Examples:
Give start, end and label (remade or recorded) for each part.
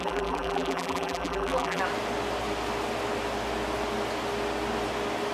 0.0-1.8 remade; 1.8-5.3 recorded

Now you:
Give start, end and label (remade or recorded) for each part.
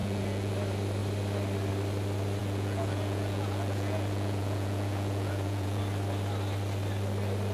0.0-0.5 remade; 0.5-2.4 recorded; 2.4-5.8 remade; 5.8-7.5 recorded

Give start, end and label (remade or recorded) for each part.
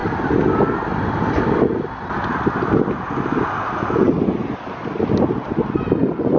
0.0-6.4 recorded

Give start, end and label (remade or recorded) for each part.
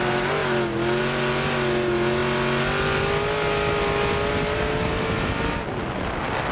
0.0-6.5 recorded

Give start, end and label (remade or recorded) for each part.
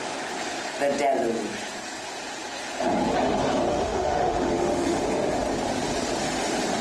0.0-3.7 recorded; 3.7-5.0 remade; 5.0-6.8 recorded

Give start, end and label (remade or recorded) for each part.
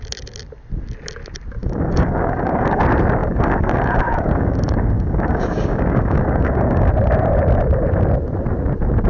0.0-1.6 recorded; 1.6-2.8 remade; 2.8-3.2 recorded; 3.2-6.9 remade; 6.9-9.1 recorded